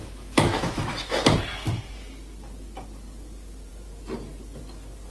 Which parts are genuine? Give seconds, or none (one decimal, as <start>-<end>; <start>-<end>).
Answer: 1.2-5.1